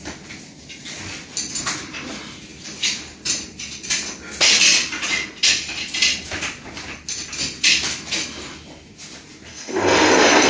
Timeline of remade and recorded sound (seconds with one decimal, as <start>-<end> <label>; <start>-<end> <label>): 0.0-9.5 recorded; 9.5-10.5 remade